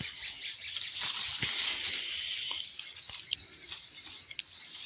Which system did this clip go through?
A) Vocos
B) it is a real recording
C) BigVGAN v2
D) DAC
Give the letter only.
B